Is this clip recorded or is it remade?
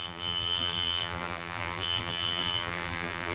remade